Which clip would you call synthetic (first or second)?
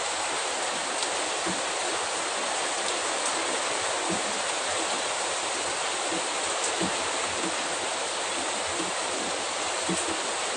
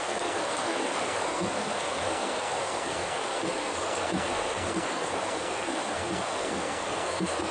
second